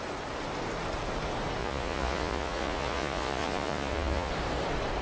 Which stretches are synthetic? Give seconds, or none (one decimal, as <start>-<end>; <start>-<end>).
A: 1.6-4.3